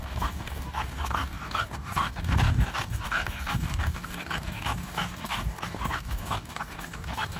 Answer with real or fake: fake